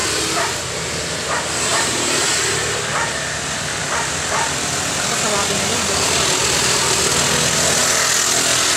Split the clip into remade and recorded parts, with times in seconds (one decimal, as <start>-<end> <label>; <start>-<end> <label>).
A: 0.0-0.6 remade; 0.6-1.7 recorded; 1.7-2.3 remade; 2.3-3.8 recorded; 3.8-7.0 remade; 7.0-8.8 recorded